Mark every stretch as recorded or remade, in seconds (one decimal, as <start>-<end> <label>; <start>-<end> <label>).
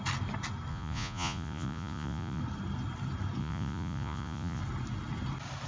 0.0-0.7 recorded; 0.7-2.4 remade; 2.4-3.4 recorded; 3.4-4.6 remade; 4.6-5.7 recorded